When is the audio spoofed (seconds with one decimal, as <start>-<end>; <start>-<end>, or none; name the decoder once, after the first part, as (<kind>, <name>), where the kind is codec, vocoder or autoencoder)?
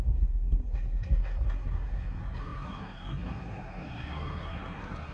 0.0-5.1 (codec, SNAC)